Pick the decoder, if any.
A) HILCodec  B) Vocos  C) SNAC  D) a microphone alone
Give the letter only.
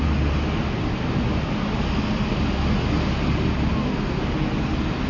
D